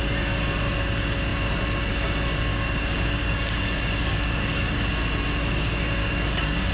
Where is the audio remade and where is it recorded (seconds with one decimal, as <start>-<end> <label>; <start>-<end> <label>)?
0.0-2.5 recorded; 2.5-4.9 remade; 4.9-6.0 recorded; 6.0-6.7 remade